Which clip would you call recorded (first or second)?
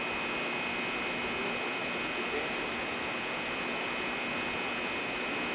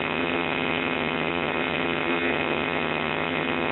first